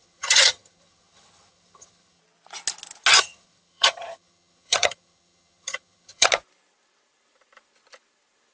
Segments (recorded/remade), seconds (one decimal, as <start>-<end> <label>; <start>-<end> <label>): 0.0-2.2 remade; 2.2-3.1 recorded; 3.1-6.3 remade; 6.3-8.5 recorded